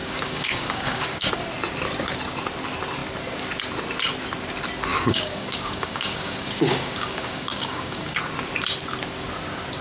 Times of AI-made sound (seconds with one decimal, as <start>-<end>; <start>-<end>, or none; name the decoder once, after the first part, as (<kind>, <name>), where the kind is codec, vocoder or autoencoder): 0.0-1.3 (codec, DAC); 4.9-8.2